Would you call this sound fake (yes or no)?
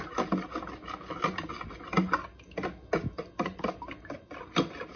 no